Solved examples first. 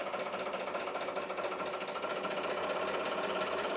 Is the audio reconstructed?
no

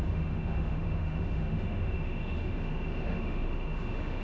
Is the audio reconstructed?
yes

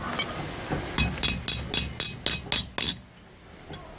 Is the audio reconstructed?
no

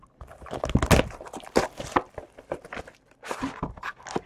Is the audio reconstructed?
no